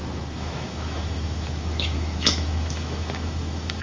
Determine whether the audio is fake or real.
fake